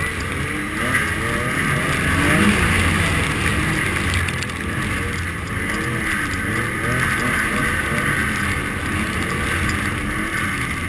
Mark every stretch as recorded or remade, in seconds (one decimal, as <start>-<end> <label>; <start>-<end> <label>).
0.0-10.9 recorded